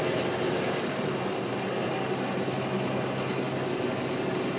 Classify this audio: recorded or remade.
recorded